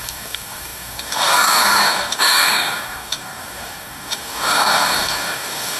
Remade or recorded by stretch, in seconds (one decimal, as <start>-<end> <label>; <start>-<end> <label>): 0.0-5.8 remade